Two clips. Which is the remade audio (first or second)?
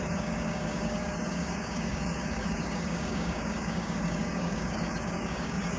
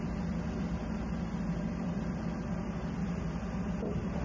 first